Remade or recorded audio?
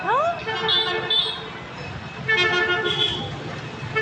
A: recorded